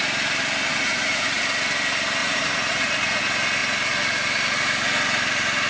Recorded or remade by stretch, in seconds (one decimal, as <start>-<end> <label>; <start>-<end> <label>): 0.0-0.7 recorded; 0.7-1.4 remade; 1.4-2.2 recorded; 2.2-3.2 remade; 3.2-5.7 recorded